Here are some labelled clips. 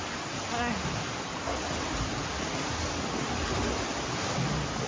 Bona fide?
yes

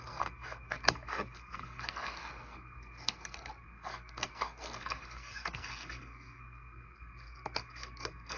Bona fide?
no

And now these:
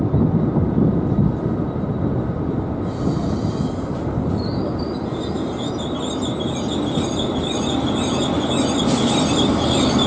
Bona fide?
yes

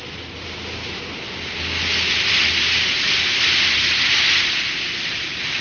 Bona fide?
yes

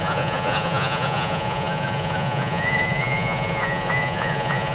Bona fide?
no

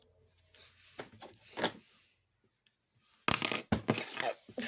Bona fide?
yes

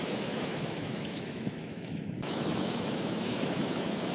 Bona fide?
no